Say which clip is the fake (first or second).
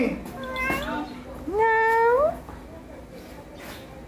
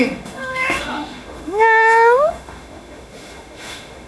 second